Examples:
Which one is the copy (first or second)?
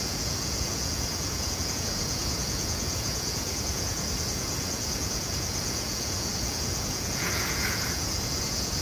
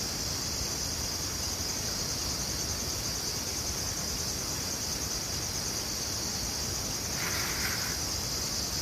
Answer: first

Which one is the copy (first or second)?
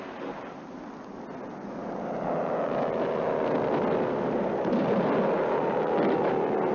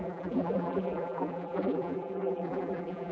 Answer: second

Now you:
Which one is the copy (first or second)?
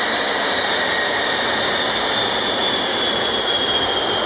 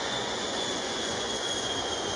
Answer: second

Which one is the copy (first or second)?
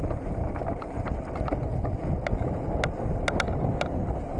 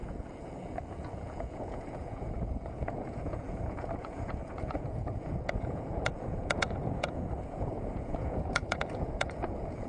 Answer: second